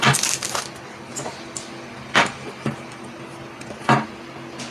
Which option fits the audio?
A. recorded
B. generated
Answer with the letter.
A